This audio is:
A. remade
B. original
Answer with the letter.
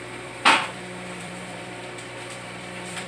A